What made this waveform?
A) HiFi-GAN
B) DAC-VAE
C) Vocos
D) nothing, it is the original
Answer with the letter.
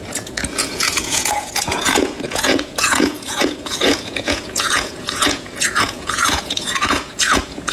C